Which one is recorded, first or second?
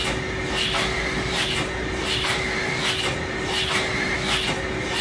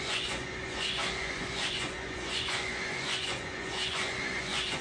first